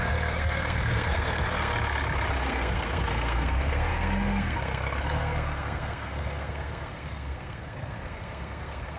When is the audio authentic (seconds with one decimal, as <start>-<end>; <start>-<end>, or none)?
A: 1.7-2.4